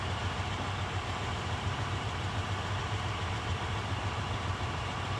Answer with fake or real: fake